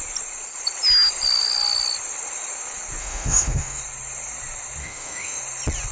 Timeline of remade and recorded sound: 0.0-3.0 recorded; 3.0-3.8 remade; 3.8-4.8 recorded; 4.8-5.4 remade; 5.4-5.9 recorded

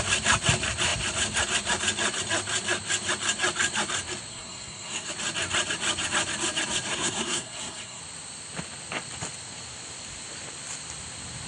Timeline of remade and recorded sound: 0.0-4.3 recorded; 4.3-5.1 remade; 5.1-6.9 recorded; 6.9-8.0 remade; 8.0-11.5 recorded